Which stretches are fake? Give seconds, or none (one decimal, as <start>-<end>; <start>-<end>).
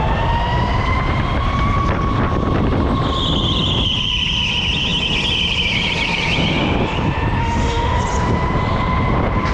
7.4-8.0